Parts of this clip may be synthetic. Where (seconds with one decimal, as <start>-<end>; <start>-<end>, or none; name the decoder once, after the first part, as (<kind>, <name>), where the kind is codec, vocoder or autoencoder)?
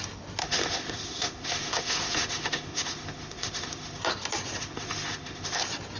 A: 0.4-4.0 (autoencoder, DAC-VAE); 4.6-5.6